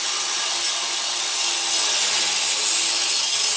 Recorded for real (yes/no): yes